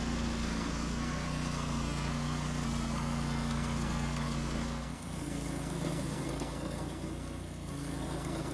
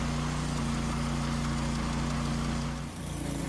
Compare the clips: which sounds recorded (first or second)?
second